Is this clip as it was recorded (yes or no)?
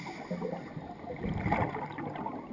yes